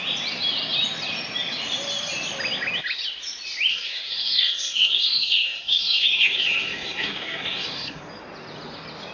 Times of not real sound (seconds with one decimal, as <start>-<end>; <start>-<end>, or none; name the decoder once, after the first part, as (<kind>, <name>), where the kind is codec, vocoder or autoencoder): 3.7-8.0 (codec, SNAC)